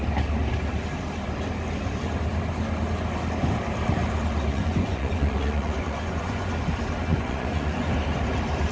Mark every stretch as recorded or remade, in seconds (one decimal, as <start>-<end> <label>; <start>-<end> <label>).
0.0-4.5 recorded; 4.5-6.5 remade; 6.5-7.1 recorded; 7.1-7.9 remade; 7.9-8.7 recorded